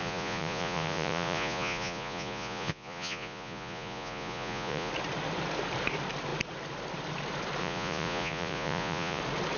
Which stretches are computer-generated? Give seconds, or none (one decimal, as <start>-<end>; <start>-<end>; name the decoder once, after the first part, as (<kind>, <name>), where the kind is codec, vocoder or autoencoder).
0.0-4.9 (vocoder, Vocos); 7.6-9.2